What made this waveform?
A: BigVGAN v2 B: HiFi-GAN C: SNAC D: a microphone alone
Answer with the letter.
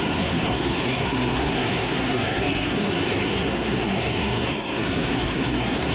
C